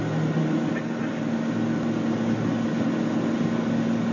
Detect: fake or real real